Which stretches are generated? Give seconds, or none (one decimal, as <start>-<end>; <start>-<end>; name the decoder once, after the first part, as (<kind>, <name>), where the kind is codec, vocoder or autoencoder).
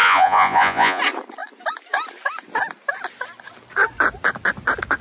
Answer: 0.0-1.0 (vocoder, Vocos)